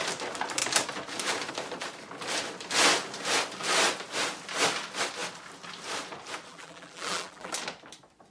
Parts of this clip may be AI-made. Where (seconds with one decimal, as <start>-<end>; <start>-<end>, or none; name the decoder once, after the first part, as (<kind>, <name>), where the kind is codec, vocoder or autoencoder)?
6.5-7.5 (vocoder, BigVGAN v2)

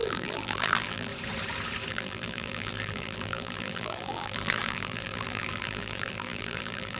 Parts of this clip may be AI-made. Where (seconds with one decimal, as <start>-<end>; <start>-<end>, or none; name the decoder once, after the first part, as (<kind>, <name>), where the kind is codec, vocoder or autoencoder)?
0.0-1.1 (vocoder, BigVGAN v2); 1.9-7.0